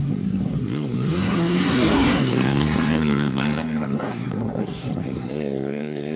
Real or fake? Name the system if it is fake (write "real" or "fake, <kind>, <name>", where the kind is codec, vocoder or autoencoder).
fake, codec, SNAC